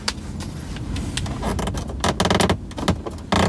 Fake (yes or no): no